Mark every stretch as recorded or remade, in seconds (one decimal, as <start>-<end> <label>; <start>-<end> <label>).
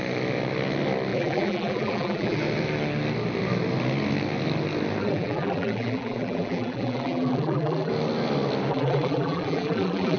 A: 0.0-1.1 recorded; 1.1-2.4 remade; 2.4-5.0 recorded; 5.0-7.9 remade; 7.9-8.7 recorded; 8.7-10.2 remade